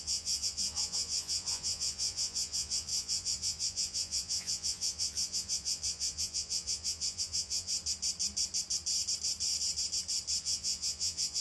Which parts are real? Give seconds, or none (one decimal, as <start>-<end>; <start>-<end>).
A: 7.7-10.4